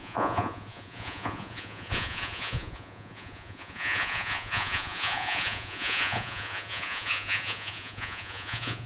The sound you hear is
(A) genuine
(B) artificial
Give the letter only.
B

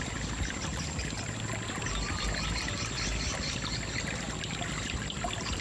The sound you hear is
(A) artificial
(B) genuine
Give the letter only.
A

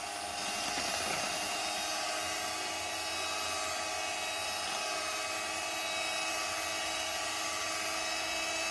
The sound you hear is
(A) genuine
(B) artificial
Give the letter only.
A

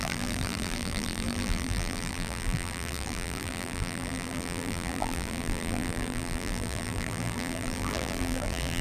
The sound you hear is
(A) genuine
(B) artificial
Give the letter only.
B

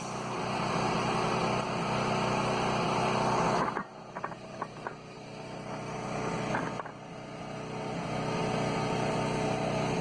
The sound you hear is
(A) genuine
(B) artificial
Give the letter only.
A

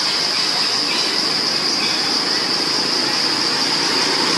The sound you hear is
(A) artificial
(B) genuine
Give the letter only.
B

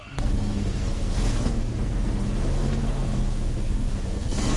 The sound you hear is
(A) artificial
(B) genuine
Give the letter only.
A